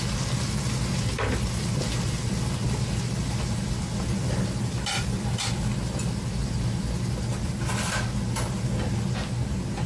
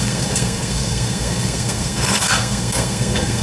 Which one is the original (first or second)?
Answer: first